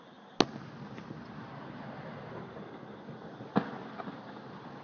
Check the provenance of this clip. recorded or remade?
recorded